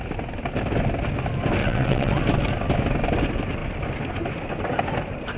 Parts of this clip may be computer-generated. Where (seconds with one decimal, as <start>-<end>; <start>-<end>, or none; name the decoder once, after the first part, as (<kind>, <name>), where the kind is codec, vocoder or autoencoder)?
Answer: 1.6-2.2 (vocoder, WaveNeXt)